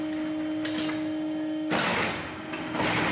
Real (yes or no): yes